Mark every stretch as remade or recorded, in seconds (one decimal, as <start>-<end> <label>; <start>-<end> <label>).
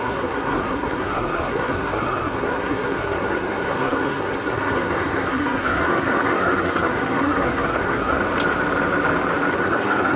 0.0-8.2 remade; 8.2-9.5 recorded; 9.5-10.2 remade